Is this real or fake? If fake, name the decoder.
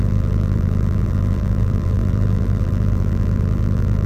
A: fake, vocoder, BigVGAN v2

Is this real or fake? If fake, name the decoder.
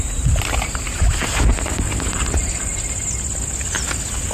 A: real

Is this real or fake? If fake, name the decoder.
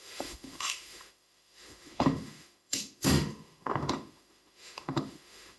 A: fake, autoencoder, DAC-VAE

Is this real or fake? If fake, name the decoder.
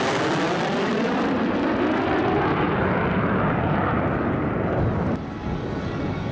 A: real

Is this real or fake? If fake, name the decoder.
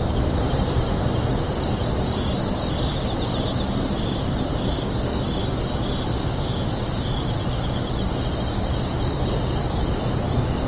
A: real